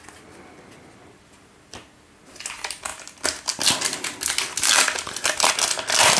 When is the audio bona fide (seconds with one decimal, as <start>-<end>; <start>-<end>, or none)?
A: 0.0-6.2